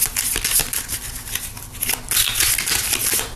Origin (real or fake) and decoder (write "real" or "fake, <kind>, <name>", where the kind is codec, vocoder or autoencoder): real